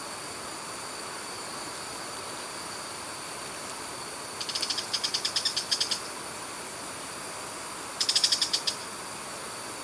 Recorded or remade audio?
recorded